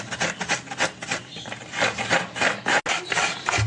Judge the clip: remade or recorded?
recorded